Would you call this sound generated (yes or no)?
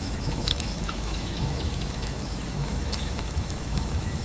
yes